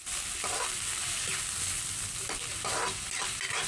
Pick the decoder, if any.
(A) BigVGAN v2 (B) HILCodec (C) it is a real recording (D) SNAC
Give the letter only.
C